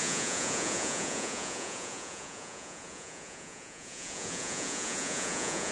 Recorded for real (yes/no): no